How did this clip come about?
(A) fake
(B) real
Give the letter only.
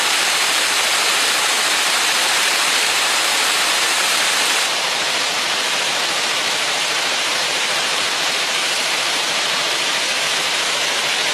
A